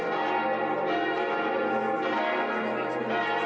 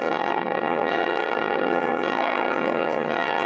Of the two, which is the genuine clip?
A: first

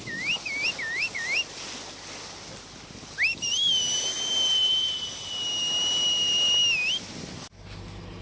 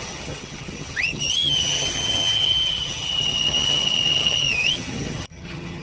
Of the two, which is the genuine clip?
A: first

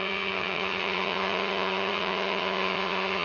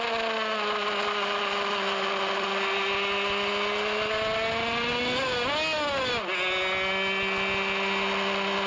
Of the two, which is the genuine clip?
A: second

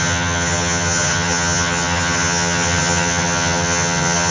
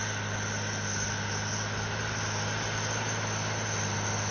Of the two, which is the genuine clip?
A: second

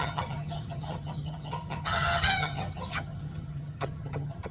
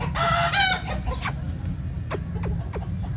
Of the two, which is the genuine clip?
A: second